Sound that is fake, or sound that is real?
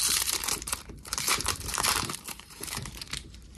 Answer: fake